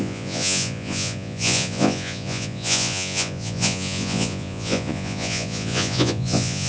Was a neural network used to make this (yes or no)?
yes